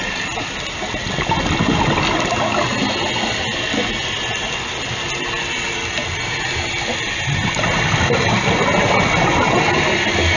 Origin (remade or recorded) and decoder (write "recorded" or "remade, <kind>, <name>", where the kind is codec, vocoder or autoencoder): recorded